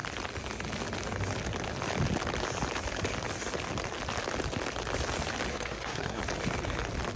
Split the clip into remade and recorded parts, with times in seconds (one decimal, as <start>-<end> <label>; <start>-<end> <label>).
0.0-5.5 recorded; 5.5-6.2 remade; 6.2-7.2 recorded